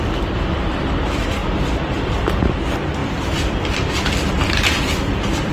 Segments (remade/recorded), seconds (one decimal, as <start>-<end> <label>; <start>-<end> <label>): 0.0-5.5 remade